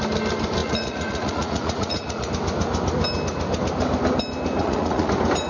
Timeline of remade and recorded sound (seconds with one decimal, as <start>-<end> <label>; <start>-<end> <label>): 0.0-0.6 recorded; 0.6-2.3 remade; 2.3-4.6 recorded; 4.6-5.1 remade; 5.1-5.5 recorded

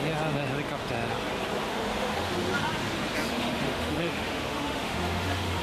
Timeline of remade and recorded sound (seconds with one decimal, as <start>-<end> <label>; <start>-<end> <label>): 0.0-1.7 recorded; 1.7-2.3 remade; 2.3-3.3 recorded; 3.3-5.6 remade

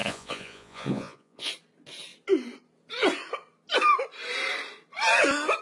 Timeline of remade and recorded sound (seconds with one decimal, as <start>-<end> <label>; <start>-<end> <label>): 0.0-1.5 remade; 1.5-5.6 recorded

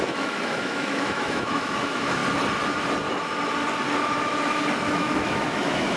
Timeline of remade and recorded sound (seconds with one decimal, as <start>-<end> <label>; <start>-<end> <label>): 0.0-2.2 remade; 2.2-4.8 recorded; 4.8-6.0 remade

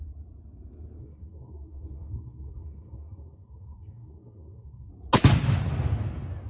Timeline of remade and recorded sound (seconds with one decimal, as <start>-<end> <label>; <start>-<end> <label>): 0.0-1.0 recorded; 1.0-4.9 remade; 4.9-6.5 recorded

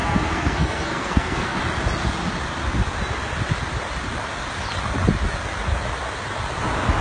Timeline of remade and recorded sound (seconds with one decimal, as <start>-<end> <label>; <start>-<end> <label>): 0.0-1.6 remade; 1.6-7.0 recorded

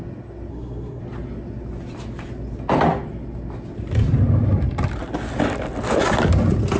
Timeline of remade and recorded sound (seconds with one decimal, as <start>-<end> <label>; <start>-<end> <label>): 0.0-0.5 recorded; 0.5-1.0 remade; 1.0-6.8 recorded